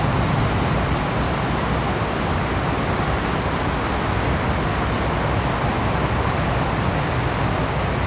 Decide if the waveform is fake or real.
real